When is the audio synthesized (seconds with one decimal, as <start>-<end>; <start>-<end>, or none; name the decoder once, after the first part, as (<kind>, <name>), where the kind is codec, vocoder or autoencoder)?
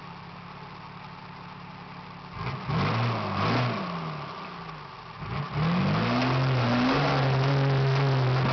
none